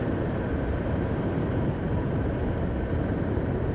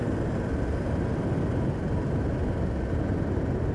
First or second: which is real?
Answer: second